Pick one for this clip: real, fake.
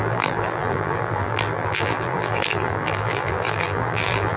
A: fake